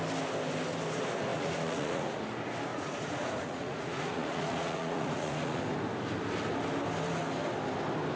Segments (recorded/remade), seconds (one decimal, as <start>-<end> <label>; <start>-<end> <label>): 0.0-1.3 recorded; 1.3-2.2 remade; 2.2-2.7 recorded; 2.7-5.6 remade; 5.6-8.2 recorded